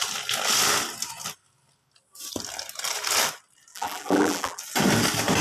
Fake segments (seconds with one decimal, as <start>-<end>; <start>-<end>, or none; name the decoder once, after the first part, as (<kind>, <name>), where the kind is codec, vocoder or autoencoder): 3.7-4.6 (vocoder, BigVGAN v2)